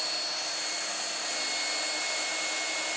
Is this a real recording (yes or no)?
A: yes